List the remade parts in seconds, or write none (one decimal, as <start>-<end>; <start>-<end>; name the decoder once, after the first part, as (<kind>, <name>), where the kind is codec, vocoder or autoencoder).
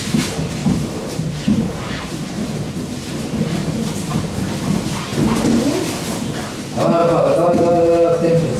0.6-1.9 (vocoder, BigVGAN v2); 3.6-4.2; 7.0-7.7